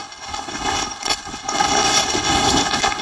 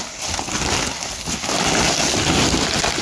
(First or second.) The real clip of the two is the second